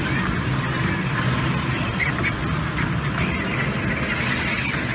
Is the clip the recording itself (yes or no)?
yes